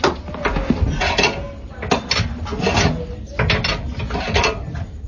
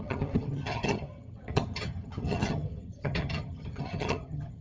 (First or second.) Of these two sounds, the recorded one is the first